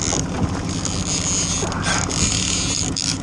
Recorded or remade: recorded